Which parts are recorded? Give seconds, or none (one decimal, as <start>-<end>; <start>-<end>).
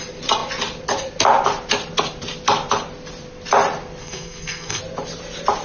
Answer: 0.0-4.0; 4.8-5.6